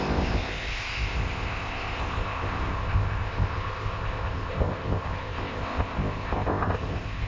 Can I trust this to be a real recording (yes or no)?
no